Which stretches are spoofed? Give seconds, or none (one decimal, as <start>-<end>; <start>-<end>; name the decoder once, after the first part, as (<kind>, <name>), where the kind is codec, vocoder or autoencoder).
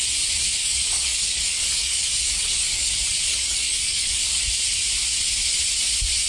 0.6-2.9 (codec, DAC); 3.3-4.5